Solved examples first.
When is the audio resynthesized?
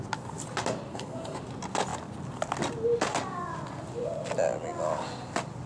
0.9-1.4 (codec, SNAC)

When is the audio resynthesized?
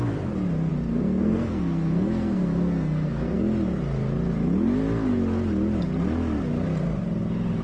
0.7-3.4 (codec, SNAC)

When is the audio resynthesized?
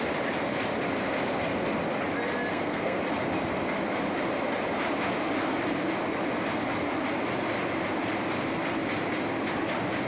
2.5-3.0 (codec, SNAC)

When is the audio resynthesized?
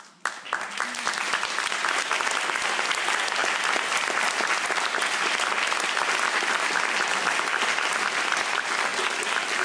none